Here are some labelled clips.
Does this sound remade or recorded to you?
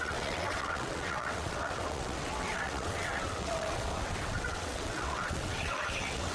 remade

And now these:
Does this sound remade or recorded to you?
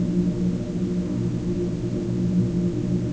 recorded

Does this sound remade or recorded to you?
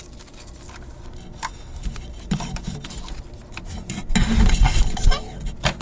recorded